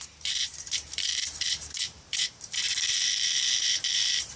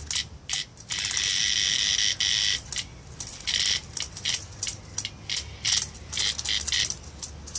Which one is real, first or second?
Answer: second